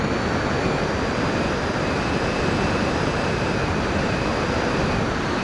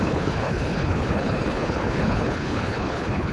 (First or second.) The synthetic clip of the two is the second